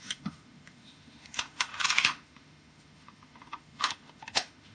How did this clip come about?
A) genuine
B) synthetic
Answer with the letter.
B